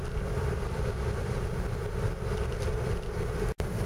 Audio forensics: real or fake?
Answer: real